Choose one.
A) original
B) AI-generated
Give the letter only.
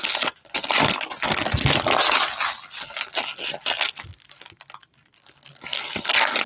A